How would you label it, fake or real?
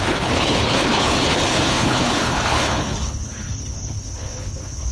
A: fake